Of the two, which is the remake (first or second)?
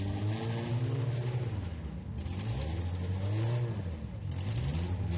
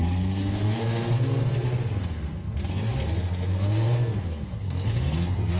second